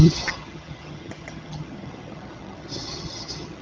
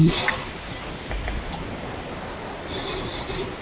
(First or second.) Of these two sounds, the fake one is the first